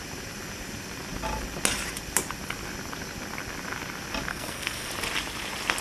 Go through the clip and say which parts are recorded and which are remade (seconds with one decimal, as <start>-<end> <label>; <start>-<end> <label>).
0.0-4.3 recorded; 4.3-4.9 remade; 4.9-5.8 recorded